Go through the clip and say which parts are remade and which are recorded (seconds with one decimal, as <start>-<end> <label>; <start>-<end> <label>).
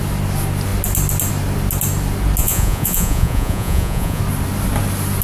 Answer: 0.0-2.4 recorded; 2.4-4.2 remade; 4.2-5.2 recorded